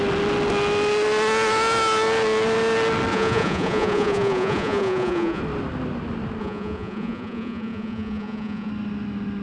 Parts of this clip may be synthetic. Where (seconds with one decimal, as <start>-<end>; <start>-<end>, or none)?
3.1-5.4; 6.4-8.7